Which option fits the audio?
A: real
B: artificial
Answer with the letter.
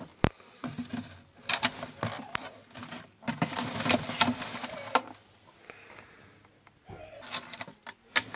A